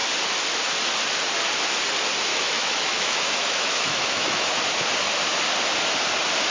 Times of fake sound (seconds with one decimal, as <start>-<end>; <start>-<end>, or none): 2.3-4.4